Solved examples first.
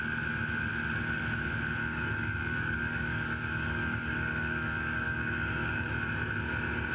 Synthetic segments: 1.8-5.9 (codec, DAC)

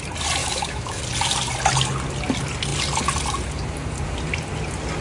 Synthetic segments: 0.4-1.0 (autoencoder, DAC-VAE)

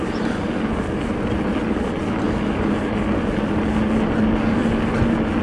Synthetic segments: none

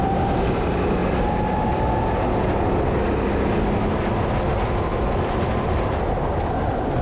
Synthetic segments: 4.9-6.0 (vocoder, BigVGAN v2)